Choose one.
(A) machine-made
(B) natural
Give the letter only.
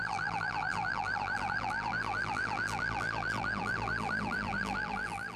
A